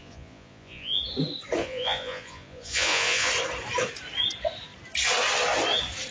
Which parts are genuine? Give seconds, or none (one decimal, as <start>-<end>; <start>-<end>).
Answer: 1.0-1.6; 3.3-6.1